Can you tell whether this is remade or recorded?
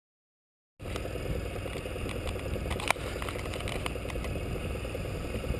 recorded